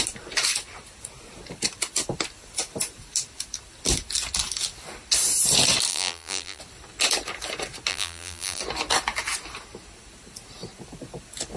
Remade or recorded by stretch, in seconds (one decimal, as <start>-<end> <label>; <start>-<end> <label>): 0.0-5.9 recorded; 5.9-6.6 remade; 6.6-7.9 recorded; 7.9-8.6 remade; 8.6-11.6 recorded